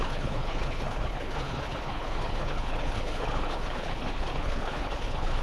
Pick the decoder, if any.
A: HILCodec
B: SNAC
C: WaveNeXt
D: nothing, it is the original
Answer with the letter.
A